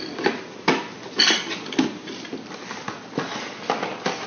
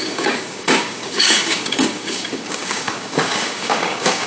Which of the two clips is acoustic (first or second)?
first